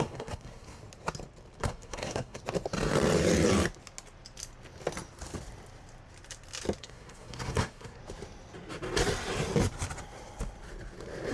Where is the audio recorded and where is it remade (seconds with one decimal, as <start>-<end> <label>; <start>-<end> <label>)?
0.0-0.8 remade; 0.8-1.6 recorded; 1.6-2.4 remade; 2.4-6.8 recorded; 6.8-8.0 remade; 8.0-11.3 recorded